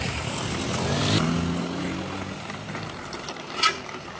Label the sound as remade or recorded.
recorded